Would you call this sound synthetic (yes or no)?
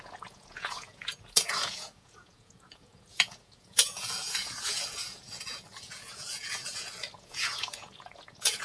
yes